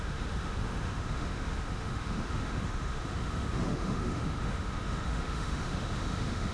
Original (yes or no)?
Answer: no